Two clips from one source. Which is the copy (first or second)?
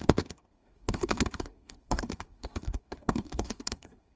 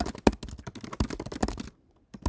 first